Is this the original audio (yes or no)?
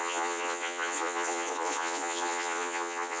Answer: no